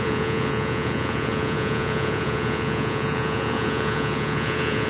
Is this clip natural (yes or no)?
no